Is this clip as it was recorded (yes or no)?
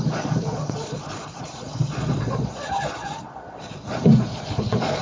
no